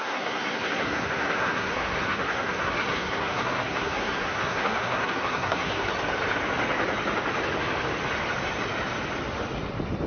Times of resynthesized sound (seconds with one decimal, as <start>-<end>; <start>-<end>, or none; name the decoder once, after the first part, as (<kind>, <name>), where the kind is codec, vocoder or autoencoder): 0.0-5.9 (codec, SNAC)